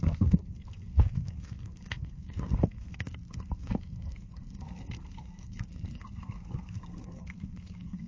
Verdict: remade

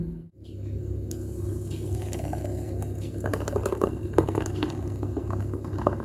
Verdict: remade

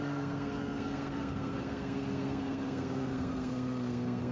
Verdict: remade